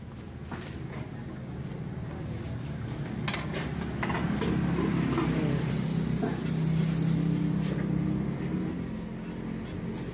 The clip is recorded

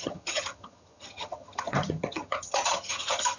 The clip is remade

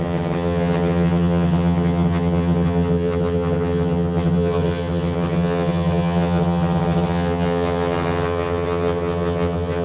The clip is remade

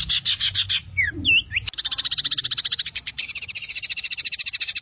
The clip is recorded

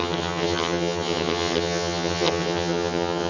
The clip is remade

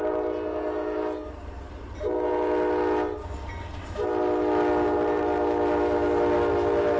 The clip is recorded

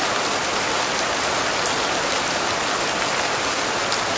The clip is recorded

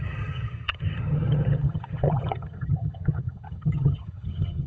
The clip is remade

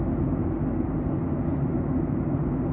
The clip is recorded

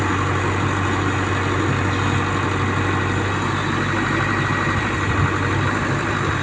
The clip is recorded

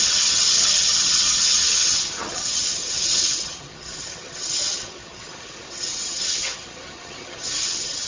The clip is remade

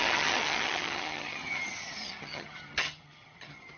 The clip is remade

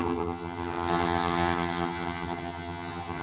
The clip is remade